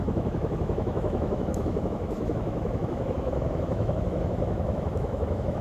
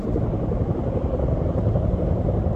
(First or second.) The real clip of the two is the second